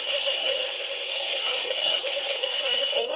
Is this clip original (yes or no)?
no